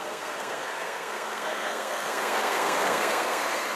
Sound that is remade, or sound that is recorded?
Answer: remade